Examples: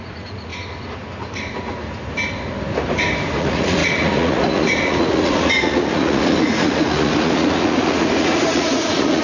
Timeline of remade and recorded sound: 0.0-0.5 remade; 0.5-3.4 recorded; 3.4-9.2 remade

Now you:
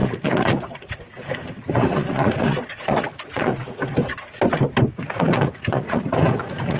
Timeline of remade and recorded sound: 0.0-3.8 remade; 3.8-4.9 recorded; 4.9-6.8 remade

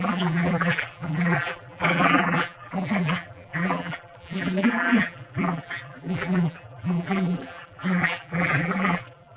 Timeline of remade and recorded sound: 0.0-9.4 remade

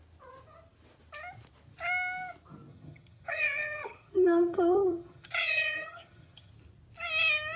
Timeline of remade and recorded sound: 0.0-2.7 recorded; 2.7-6.5 remade; 6.5-7.6 recorded

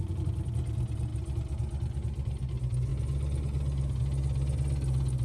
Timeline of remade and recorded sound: 0.0-5.2 recorded

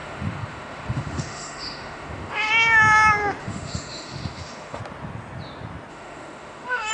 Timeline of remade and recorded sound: 0.0-2.5 remade; 2.5-3.4 recorded; 3.4-4.8 remade; 4.8-5.9 recorded; 5.9-6.9 remade